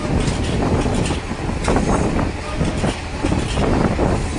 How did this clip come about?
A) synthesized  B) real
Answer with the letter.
B